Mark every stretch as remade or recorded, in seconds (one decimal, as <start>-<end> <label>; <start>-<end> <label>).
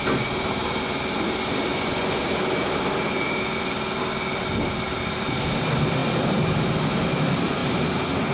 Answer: 0.0-1.7 recorded; 1.7-2.2 remade; 2.2-8.3 recorded